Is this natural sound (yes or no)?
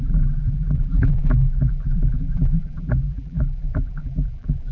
no